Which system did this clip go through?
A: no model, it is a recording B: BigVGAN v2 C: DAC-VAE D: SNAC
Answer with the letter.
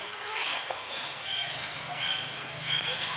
D